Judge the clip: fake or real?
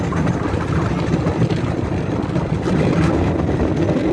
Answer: real